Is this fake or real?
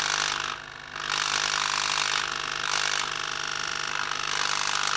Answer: real